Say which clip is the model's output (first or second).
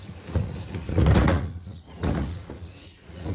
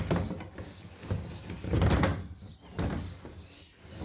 first